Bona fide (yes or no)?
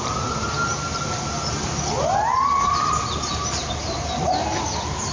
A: yes